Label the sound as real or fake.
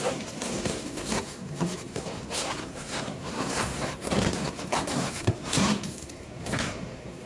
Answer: fake